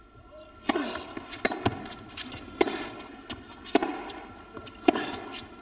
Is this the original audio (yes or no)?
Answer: yes